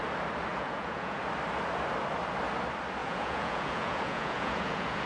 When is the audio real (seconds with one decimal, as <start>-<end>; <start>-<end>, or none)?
0.0-0.5; 1.2-3.0